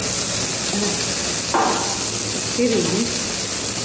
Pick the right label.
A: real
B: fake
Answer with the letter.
A